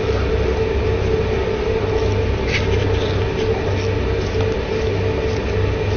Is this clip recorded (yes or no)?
yes